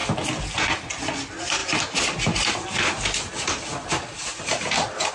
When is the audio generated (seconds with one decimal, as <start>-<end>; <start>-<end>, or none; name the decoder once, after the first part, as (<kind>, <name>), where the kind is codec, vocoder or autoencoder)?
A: none